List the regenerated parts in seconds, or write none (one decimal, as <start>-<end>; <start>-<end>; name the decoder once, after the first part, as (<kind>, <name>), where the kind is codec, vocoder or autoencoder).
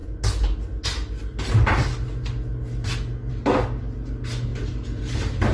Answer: none